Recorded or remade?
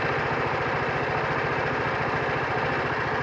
recorded